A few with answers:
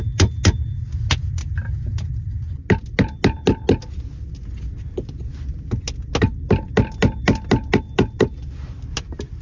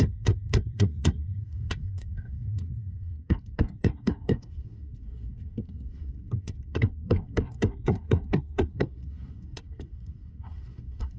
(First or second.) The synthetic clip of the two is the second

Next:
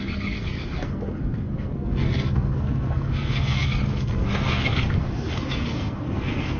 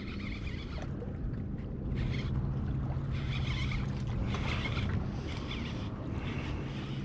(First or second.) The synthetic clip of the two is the first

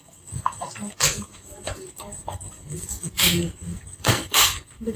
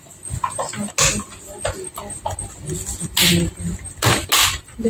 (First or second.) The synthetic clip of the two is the first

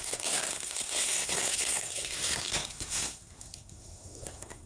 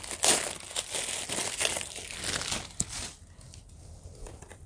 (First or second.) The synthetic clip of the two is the first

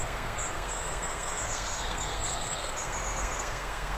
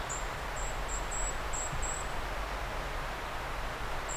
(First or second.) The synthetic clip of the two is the first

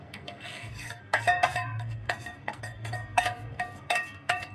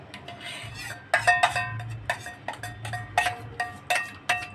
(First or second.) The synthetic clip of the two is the first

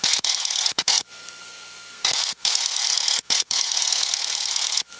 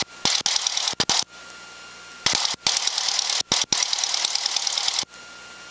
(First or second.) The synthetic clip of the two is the first